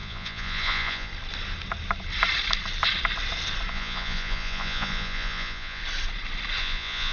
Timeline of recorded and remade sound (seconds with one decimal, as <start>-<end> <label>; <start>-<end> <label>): 0.0-1.1 remade; 1.1-3.7 recorded; 3.7-5.8 remade; 5.8-6.6 recorded; 6.6-7.1 remade